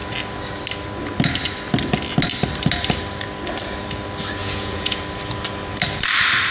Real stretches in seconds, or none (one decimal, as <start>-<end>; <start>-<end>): 0.0-4.4; 5.0-6.5